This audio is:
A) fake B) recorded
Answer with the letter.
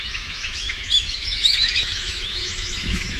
A